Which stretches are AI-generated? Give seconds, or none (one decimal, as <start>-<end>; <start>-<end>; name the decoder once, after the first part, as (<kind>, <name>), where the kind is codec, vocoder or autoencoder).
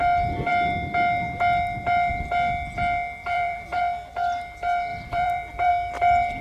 3.2-3.8 (vocoder, BigVGAN v2); 4.9-5.7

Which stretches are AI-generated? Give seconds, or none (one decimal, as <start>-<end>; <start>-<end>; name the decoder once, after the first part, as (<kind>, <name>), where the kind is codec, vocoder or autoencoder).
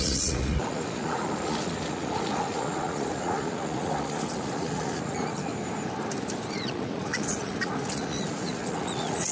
0.0-5.5 (vocoder, Vocos); 6.5-9.3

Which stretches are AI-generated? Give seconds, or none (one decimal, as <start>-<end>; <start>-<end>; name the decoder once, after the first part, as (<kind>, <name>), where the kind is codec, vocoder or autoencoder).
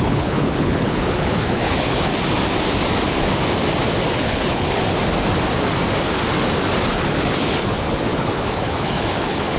0.0-2.1 (codec, HILCodec); 4.1-4.8; 6.9-9.6